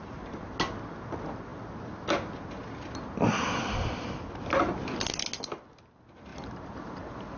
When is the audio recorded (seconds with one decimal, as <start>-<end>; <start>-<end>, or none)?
0.0-6.3